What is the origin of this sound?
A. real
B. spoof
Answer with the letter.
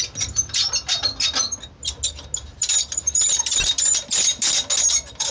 A